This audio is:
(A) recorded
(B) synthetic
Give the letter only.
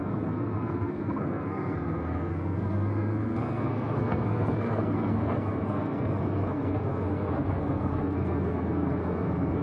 B